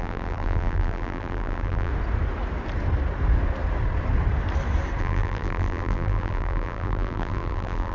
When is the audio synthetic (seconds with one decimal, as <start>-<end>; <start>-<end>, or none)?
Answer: 0.0-1.9; 5.0-7.9